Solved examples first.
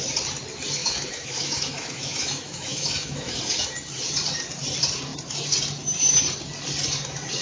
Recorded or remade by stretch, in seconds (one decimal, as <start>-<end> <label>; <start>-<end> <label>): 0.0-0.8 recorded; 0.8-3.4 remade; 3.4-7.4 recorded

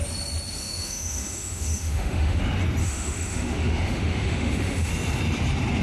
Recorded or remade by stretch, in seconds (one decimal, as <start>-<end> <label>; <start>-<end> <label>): 0.0-0.6 recorded; 0.6-2.4 remade; 2.4-2.8 recorded; 2.8-4.9 remade; 4.9-5.8 recorded

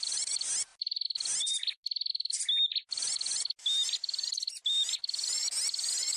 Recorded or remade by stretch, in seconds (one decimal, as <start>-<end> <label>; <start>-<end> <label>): 0.0-6.2 recorded

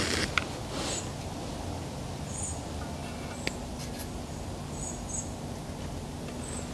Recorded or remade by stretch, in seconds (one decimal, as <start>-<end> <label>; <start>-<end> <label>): 0.0-6.7 recorded